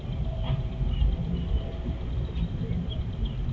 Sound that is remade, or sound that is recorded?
remade